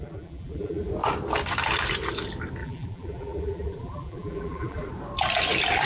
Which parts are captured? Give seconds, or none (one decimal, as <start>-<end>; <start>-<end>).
0.9-2.6; 4.9-5.9